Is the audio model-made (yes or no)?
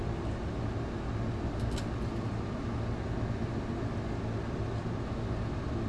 no